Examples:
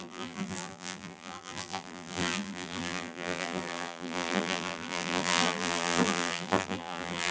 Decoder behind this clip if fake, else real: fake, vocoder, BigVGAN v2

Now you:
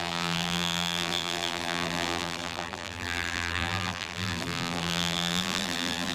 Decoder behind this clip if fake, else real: fake, vocoder, BigVGAN v2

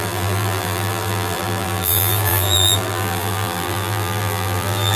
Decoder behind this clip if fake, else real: fake, vocoder, BigVGAN v2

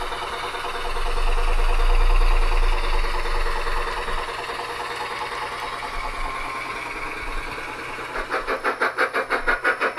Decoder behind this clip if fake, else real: real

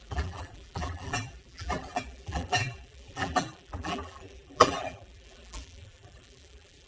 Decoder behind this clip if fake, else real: fake, vocoder, BigVGAN v2